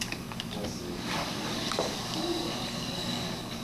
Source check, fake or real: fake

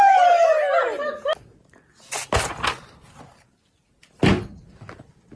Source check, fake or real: real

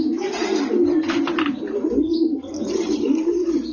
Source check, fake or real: real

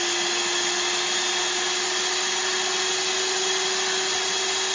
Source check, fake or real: real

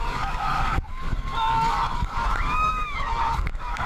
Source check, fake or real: fake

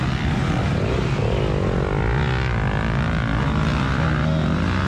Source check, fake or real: real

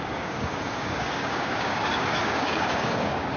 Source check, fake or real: fake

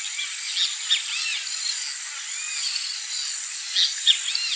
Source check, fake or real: real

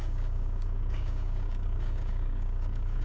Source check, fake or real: fake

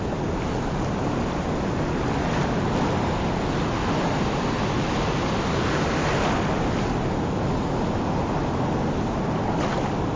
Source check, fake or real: real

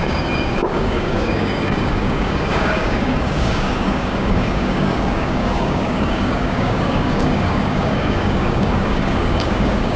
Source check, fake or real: fake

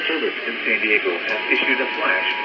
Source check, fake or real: real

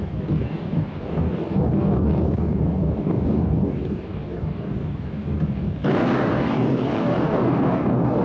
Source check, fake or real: fake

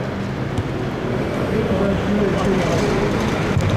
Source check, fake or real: real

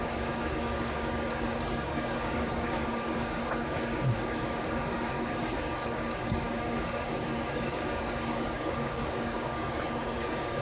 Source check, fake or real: fake